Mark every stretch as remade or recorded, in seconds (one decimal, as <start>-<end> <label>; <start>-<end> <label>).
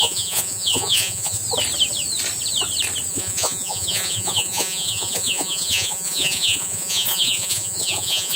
0.0-1.4 remade; 1.4-3.1 recorded; 3.1-8.4 remade